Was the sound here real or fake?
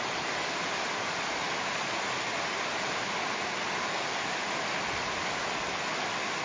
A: real